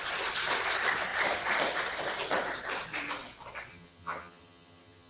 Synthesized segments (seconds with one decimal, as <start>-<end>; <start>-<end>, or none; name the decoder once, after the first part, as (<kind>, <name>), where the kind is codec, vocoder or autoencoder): 3.7-5.1 (vocoder, HiFi-GAN)